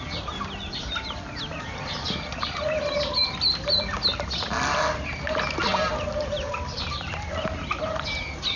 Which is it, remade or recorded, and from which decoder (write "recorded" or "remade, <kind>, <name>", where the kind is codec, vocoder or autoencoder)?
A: recorded